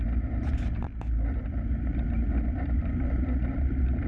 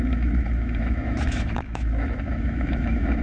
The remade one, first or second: second